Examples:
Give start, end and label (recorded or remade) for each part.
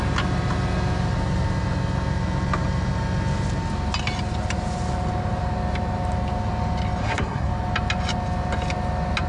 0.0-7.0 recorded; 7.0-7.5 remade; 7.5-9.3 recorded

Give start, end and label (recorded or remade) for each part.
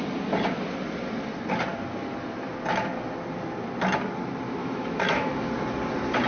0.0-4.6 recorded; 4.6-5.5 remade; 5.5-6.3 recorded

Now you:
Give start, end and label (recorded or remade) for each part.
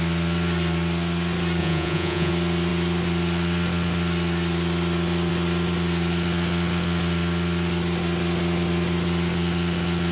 0.0-1.6 recorded; 1.6-2.3 remade; 2.3-10.1 recorded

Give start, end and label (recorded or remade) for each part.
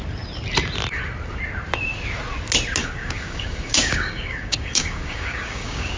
0.0-2.8 recorded; 2.8-6.0 remade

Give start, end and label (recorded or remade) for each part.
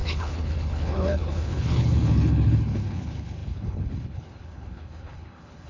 0.0-5.7 remade